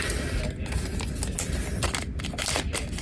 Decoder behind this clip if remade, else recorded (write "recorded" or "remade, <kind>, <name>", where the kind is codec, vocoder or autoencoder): recorded